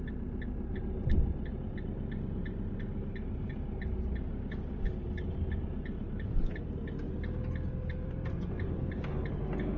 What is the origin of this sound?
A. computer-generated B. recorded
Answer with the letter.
B